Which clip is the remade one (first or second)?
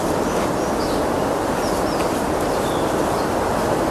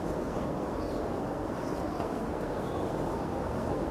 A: second